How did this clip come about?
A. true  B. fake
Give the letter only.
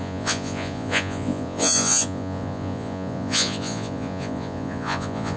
B